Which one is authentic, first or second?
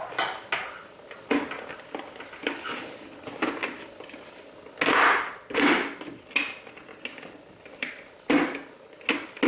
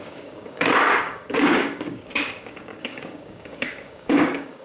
first